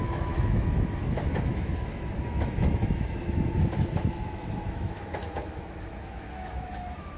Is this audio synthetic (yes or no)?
yes